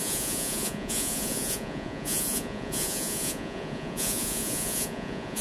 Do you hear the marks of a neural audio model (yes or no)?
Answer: yes